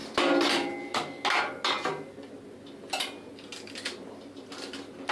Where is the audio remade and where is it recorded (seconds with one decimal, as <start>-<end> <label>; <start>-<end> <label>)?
0.0-5.1 recorded